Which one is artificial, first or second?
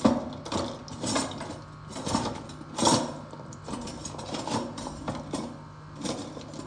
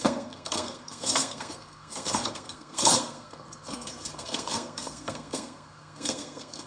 second